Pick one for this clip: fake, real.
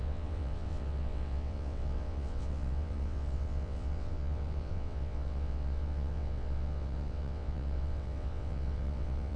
fake